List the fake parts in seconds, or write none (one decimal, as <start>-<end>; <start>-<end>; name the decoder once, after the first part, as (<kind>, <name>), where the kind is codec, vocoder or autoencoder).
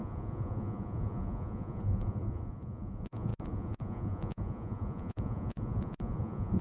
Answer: 0.0-6.6 (vocoder, Vocos)